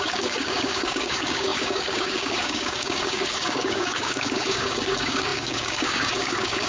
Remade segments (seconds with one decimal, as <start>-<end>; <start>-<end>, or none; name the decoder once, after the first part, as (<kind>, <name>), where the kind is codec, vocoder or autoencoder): 0.0-6.7 (codec, DAC)